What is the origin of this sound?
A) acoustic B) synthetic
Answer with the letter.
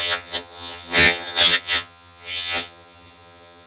B